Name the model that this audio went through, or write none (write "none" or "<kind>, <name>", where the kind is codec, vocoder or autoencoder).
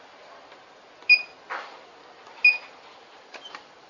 none